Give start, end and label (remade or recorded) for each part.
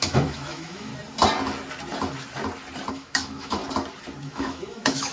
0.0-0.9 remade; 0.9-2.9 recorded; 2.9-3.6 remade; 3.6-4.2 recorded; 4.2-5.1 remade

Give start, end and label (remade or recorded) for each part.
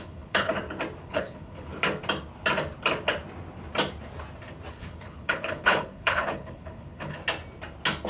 0.0-0.5 remade; 0.5-1.0 recorded; 1.0-1.7 remade; 1.7-4.7 recorded; 4.7-7.2 remade; 7.2-8.1 recorded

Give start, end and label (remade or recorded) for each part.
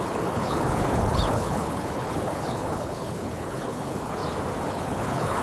0.0-4.2 remade; 4.2-4.7 recorded; 4.7-5.4 remade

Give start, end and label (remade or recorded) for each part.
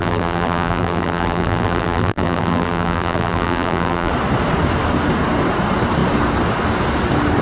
0.0-4.1 remade; 4.1-7.4 recorded